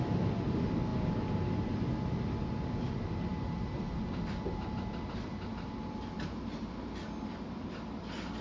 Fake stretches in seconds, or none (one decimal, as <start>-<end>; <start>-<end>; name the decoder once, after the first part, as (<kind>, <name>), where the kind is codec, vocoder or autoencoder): none